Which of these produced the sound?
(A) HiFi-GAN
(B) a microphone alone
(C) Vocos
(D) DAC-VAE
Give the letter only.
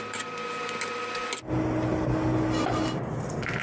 B